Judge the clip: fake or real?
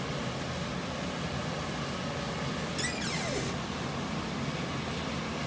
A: real